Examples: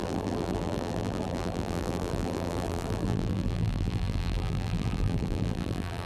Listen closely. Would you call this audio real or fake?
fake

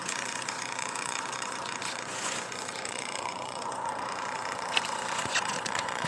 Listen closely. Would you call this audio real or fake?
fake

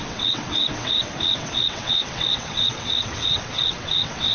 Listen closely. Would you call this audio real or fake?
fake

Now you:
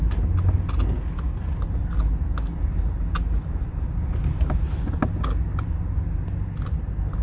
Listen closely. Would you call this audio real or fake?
real